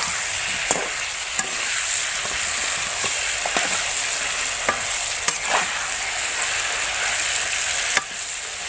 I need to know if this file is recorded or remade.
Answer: recorded